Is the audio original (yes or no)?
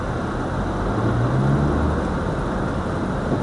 yes